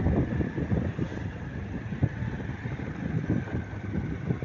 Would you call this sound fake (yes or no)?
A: no